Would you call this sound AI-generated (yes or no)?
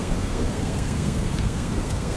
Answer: yes